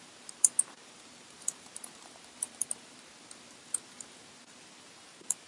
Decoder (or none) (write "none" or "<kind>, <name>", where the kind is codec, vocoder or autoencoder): vocoder, BigVGAN v2